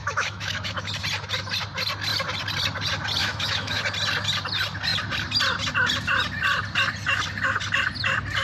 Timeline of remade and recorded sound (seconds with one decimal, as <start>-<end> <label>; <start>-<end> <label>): 0.0-0.9 remade; 0.9-3.2 recorded; 3.2-3.8 remade; 3.8-8.4 recorded